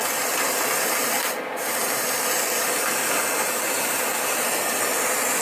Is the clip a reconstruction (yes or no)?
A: no